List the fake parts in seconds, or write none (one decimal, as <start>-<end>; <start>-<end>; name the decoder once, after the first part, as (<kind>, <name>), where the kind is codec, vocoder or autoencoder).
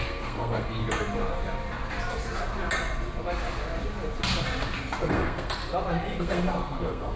0.0-0.8 (codec, SNAC); 5.1-5.6; 6.2-7.2